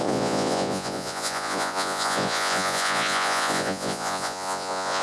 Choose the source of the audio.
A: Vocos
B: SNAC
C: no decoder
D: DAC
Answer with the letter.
A